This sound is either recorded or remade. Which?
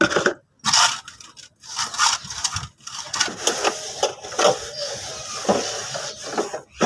recorded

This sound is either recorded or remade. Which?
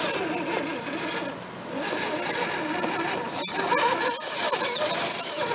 recorded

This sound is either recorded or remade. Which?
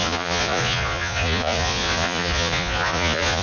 remade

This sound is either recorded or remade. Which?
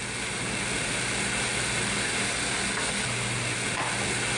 recorded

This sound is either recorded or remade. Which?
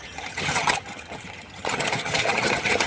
remade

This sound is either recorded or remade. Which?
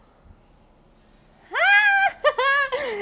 recorded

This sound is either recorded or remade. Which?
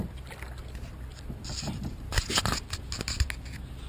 recorded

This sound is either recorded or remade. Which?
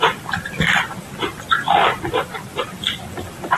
recorded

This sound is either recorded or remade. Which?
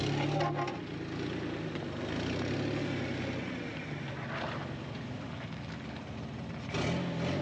recorded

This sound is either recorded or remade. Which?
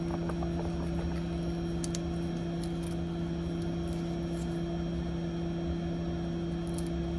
recorded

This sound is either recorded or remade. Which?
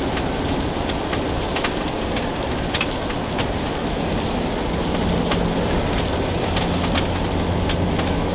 recorded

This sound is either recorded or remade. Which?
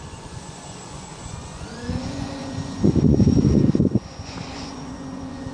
remade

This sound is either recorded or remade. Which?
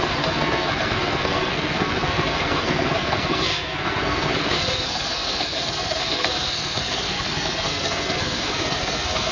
remade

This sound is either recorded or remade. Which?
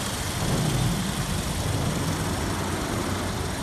recorded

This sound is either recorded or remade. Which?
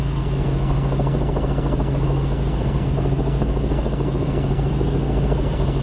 remade